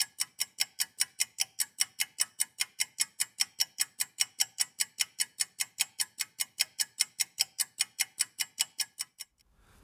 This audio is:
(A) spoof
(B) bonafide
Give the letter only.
B